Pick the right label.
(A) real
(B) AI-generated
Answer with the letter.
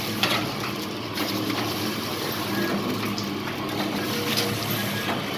A